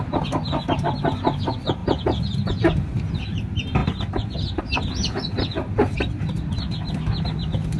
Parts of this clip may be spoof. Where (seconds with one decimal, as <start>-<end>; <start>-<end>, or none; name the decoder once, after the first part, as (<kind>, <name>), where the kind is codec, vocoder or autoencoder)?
none